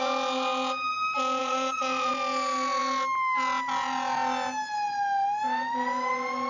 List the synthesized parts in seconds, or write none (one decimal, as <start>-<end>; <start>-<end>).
1.4-2.1